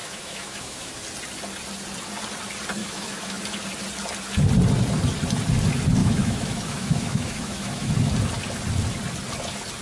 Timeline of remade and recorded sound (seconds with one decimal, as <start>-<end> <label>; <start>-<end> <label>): 0.0-0.9 remade; 0.9-2.8 recorded; 2.8-3.4 remade; 3.4-6.0 recorded; 6.0-7.9 remade; 7.9-9.8 recorded